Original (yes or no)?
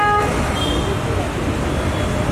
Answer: yes